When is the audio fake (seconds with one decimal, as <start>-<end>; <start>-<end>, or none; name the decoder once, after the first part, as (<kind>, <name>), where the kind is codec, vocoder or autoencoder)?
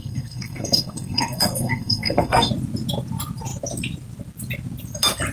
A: 0.0-2.5 (codec, SNAC)